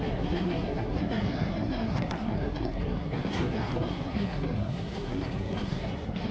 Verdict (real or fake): fake